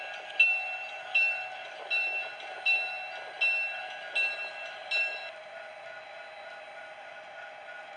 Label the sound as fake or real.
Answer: real